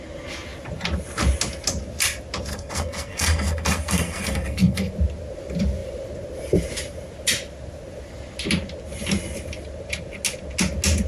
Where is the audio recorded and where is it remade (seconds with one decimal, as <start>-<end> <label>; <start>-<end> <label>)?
0.0-2.5 recorded; 2.5-4.9 remade; 4.9-11.1 recorded

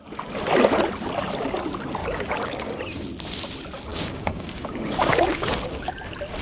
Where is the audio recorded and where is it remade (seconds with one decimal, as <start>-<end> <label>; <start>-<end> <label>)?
0.0-2.0 recorded; 2.0-2.7 remade; 2.7-3.9 recorded; 3.9-5.9 remade; 5.9-6.4 recorded

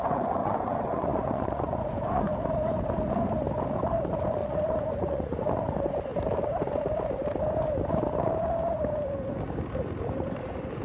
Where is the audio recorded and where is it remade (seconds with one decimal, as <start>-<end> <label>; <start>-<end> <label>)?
0.0-0.4 recorded; 0.4-2.2 remade; 2.2-4.4 recorded; 4.4-5.4 remade; 5.4-10.8 recorded

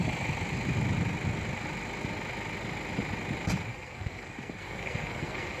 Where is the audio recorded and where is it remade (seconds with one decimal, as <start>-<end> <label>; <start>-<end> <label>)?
0.0-3.7 recorded; 3.7-5.6 remade

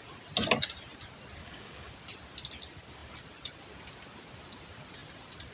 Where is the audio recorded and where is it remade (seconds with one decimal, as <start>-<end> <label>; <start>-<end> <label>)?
0.0-1.4 recorded; 1.4-1.9 remade; 1.9-5.5 recorded

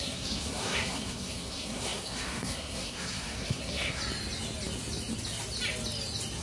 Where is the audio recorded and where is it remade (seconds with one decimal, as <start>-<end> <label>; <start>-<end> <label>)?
0.0-4.0 remade; 4.0-6.4 recorded

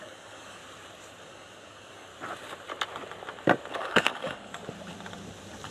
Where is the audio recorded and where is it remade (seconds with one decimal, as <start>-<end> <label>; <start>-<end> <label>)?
0.0-0.6 remade; 0.6-1.2 recorded; 1.2-2.1 remade; 2.1-3.7 recorded; 3.7-4.5 remade; 4.5-5.7 recorded